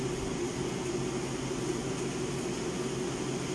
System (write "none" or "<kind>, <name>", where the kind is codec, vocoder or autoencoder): none